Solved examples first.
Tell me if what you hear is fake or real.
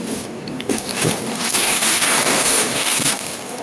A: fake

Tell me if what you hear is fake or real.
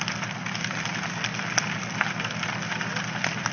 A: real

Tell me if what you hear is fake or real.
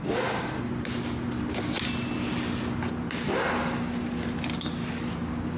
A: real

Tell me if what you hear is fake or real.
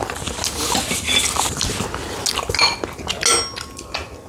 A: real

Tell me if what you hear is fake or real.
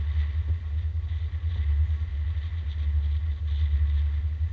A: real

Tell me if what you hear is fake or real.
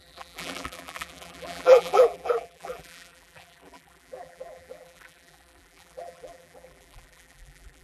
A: fake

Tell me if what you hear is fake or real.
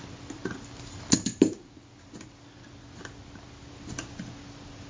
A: real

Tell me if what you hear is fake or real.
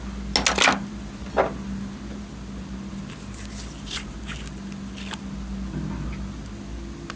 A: real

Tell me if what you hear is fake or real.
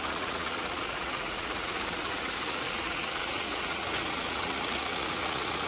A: fake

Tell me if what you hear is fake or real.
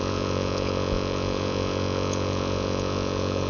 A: fake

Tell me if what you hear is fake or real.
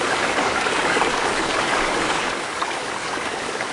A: fake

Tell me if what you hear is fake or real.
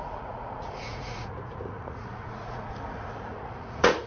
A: fake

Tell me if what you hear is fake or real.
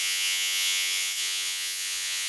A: fake